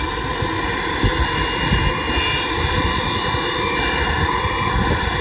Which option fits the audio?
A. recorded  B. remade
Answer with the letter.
A